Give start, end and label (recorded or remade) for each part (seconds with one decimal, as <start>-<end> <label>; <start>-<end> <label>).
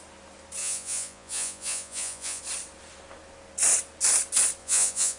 0.0-0.6 recorded; 0.6-2.4 remade; 2.4-4.6 recorded; 4.6-5.2 remade